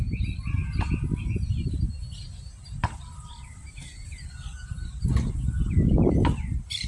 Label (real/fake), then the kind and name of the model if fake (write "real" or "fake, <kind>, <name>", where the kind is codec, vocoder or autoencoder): real